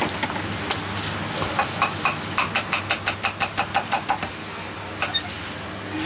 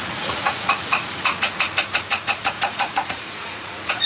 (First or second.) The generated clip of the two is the second